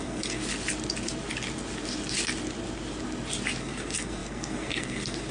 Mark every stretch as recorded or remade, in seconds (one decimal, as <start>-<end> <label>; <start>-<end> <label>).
0.0-0.4 remade; 0.4-3.6 recorded; 3.6-5.3 remade